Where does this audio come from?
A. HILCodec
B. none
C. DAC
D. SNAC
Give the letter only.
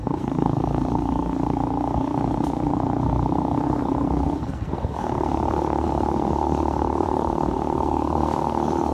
D